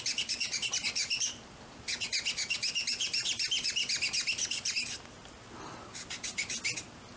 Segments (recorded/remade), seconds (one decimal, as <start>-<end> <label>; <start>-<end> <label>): 0.0-4.3 recorded; 4.3-5.0 remade; 5.0-7.2 recorded